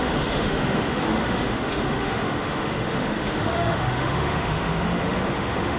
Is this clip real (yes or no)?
no